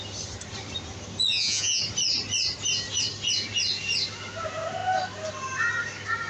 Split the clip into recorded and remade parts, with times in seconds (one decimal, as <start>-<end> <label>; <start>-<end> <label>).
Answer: 0.0-1.3 recorded; 1.3-1.8 remade; 1.8-6.3 recorded